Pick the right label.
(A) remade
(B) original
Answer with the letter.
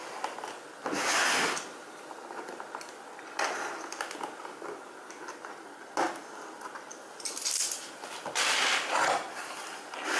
B